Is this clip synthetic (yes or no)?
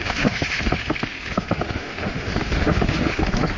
yes